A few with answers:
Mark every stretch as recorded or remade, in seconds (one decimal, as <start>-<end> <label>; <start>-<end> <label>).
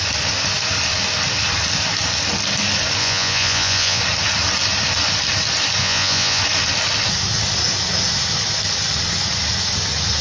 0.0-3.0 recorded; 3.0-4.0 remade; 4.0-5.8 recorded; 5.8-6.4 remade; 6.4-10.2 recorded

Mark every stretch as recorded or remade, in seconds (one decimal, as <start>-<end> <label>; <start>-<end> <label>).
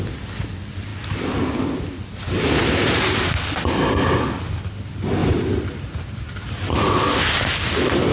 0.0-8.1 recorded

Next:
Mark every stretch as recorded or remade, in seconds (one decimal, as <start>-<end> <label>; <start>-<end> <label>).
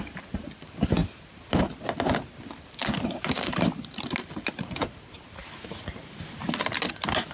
0.0-7.3 recorded